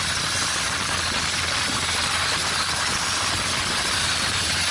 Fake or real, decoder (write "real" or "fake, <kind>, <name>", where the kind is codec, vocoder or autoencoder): real